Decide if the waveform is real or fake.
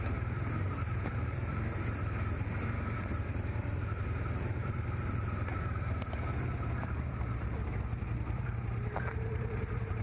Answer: fake